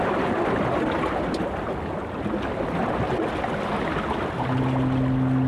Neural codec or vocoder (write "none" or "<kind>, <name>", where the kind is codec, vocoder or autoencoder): none